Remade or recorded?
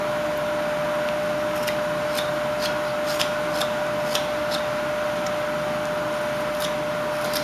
recorded